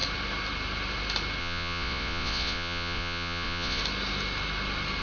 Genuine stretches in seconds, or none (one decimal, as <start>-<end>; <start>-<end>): 0.0-1.4; 3.8-5.0